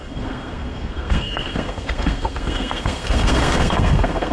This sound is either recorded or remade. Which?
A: remade